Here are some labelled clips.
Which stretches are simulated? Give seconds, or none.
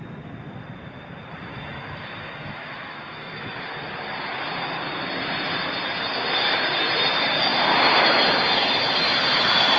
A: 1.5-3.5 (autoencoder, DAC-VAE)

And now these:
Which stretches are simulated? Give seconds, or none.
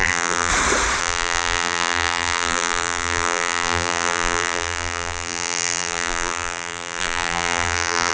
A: 0.0-0.5 (vocoder, BigVGAN v2); 1.0-8.1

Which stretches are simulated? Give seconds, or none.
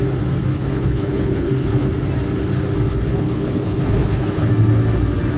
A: 0.5-1.9 (codec, HILCodec); 2.9-4.5